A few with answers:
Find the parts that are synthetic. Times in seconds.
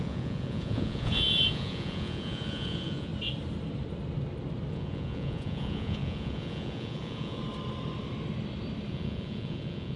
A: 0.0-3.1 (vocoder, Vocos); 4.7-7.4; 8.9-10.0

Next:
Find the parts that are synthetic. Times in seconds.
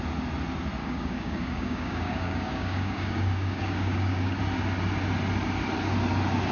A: 0.8-4.4 (codec, DAC)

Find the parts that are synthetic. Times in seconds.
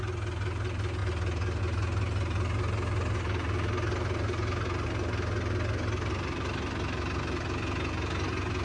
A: none